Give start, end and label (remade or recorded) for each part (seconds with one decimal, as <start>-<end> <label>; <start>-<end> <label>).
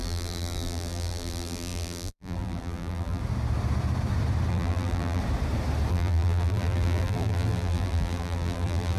0.0-3.2 remade; 3.2-4.5 recorded; 4.5-5.2 remade; 5.2-5.9 recorded; 5.9-9.0 remade